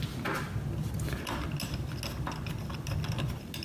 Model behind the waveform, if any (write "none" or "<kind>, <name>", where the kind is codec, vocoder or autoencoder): none